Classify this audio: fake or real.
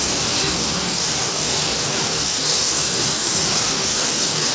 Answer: fake